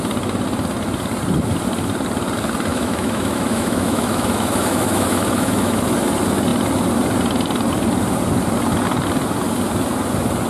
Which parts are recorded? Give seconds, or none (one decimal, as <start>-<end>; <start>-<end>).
0.0-2.7; 5.8-10.5